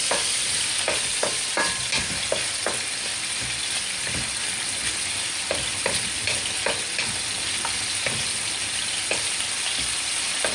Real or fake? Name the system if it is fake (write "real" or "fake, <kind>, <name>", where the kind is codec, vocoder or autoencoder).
real